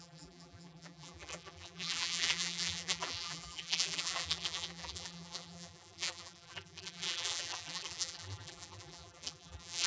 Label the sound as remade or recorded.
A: remade